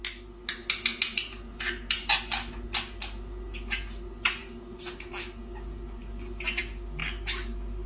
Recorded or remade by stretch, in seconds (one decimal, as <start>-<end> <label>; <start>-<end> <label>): 0.0-7.9 recorded